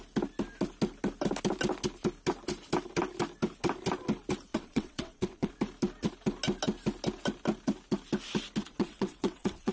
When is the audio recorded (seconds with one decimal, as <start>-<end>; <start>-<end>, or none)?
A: 0.0-4.5; 5.5-8.6